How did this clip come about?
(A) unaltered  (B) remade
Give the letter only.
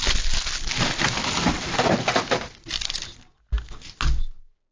A